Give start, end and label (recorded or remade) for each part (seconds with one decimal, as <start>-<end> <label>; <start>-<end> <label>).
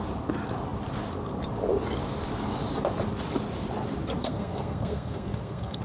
0.0-4.2 recorded; 4.2-5.8 remade